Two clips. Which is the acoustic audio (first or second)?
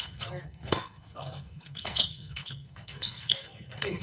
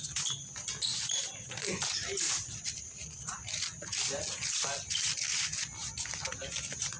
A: second